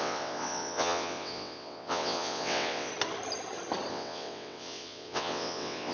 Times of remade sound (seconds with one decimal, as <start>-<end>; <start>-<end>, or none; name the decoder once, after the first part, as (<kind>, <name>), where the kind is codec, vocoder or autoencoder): 0.0-2.9 (vocoder, WaveNeXt); 3.9-5.9